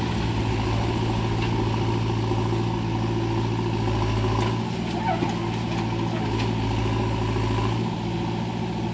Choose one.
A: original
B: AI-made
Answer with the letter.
A